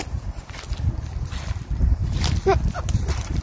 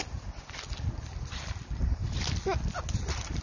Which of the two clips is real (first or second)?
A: second